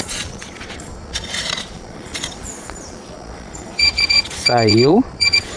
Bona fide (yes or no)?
no